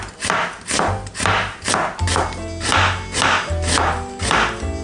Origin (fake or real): real